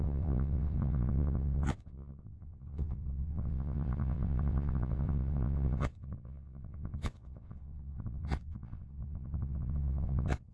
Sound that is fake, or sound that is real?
fake